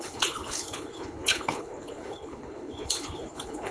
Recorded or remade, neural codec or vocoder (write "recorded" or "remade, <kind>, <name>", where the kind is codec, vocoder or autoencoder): remade, codec, HILCodec